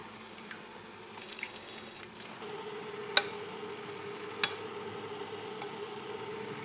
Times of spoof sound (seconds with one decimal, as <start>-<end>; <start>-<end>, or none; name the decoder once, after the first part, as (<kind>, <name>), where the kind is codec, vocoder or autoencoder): 1.2-2.0 (codec, DAC)